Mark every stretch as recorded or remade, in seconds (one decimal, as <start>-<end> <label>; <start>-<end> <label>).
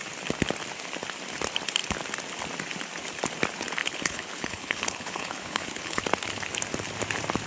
0.0-3.8 recorded; 3.8-6.0 remade; 6.0-7.5 recorded